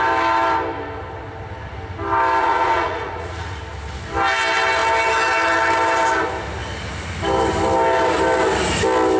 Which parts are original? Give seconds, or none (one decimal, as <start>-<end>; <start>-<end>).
0.0-2.4; 3.6-9.2